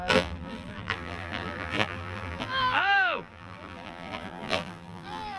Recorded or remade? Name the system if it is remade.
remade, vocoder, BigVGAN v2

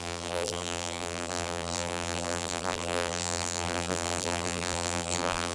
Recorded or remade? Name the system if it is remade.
remade, vocoder, BigVGAN v2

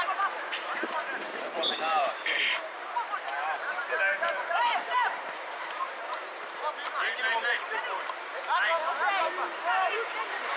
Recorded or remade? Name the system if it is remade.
remade, vocoder, BigVGAN v2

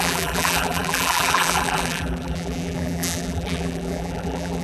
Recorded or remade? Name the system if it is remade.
remade, vocoder, BigVGAN v2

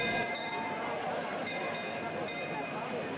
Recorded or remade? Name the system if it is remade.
recorded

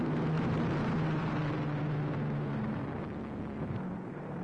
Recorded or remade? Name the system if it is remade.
remade, vocoder, BigVGAN v2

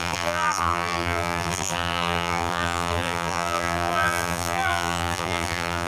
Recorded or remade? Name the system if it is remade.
remade, vocoder, BigVGAN v2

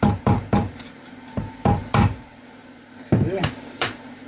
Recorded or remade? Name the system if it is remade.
remade, vocoder, BigVGAN v2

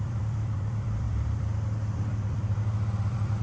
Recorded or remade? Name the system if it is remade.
remade, vocoder, BigVGAN v2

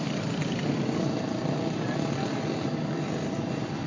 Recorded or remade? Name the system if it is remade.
remade, vocoder, BigVGAN v2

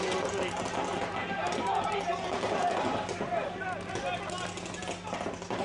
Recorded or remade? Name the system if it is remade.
recorded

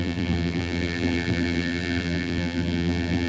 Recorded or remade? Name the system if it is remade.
remade, vocoder, BigVGAN v2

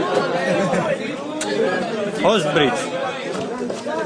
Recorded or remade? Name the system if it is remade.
remade, vocoder, BigVGAN v2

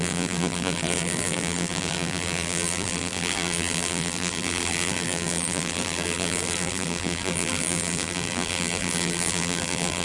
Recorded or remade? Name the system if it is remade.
remade, vocoder, BigVGAN v2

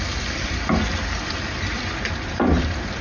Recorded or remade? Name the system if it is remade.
remade, vocoder, BigVGAN v2